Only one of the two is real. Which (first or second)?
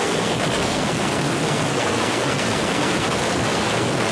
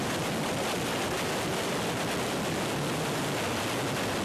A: second